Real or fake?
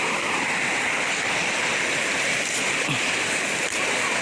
real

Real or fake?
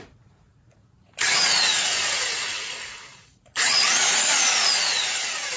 fake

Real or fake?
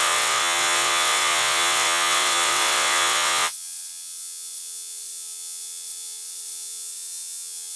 fake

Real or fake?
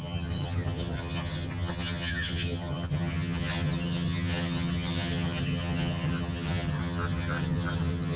fake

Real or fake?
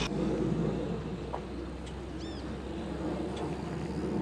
real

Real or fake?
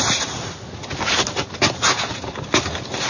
real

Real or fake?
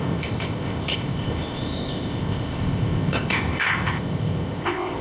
fake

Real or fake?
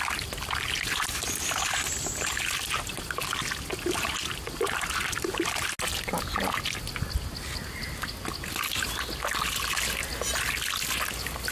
real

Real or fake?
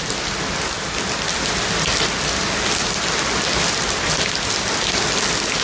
real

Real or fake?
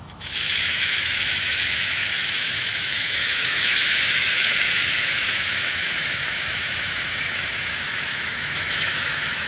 fake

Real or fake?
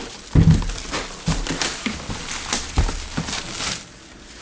real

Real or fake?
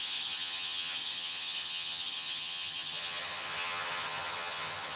fake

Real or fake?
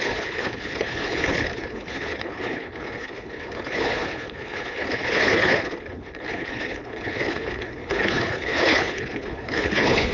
fake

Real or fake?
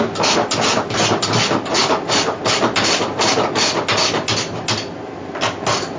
real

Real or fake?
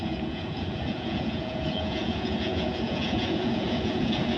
fake